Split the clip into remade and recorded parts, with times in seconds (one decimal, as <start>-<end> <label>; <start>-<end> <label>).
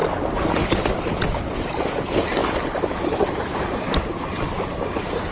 0.0-5.3 recorded